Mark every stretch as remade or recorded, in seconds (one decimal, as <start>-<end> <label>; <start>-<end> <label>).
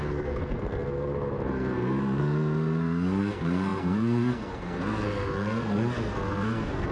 0.0-6.9 remade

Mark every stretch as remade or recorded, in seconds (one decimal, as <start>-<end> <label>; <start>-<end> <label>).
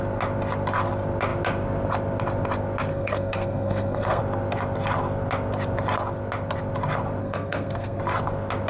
0.0-2.9 recorded; 2.9-4.2 remade; 4.2-7.2 recorded; 7.2-8.0 remade; 8.0-8.7 recorded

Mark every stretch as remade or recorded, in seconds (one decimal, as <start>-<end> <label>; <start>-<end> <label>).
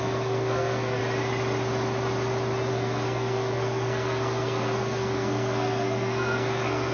0.0-1.0 remade; 1.0-2.7 recorded; 2.7-6.9 remade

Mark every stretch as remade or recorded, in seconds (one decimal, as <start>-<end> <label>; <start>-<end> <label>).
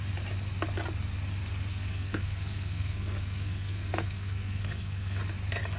0.0-1.7 recorded; 1.7-5.2 remade; 5.2-5.8 recorded